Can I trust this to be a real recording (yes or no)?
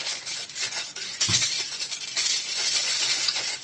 no